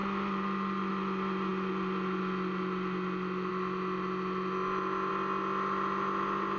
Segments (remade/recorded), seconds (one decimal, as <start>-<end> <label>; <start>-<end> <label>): 0.0-6.6 recorded